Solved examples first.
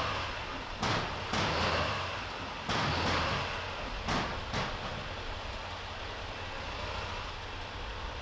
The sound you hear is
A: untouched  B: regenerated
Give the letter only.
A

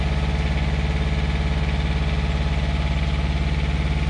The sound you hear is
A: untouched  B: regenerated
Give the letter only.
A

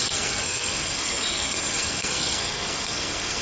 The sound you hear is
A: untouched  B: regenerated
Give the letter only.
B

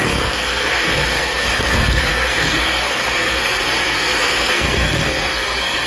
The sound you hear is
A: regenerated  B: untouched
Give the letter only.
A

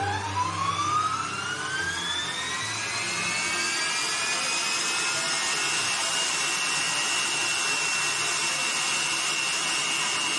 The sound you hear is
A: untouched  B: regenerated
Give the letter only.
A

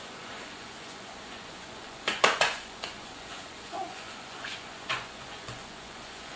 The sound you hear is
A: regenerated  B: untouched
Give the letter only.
A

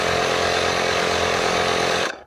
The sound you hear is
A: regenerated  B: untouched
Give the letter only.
A